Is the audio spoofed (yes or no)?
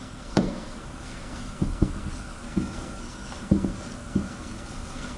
yes